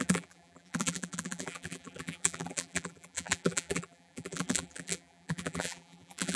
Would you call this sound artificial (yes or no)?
yes